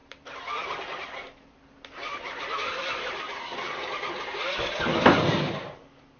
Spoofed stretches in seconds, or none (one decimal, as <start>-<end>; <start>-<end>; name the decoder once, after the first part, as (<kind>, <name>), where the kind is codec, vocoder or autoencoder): 0.0-3.2 (vocoder, BigVGAN v2)